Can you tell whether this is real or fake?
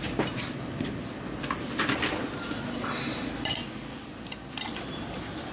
real